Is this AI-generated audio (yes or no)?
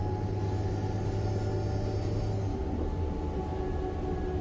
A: no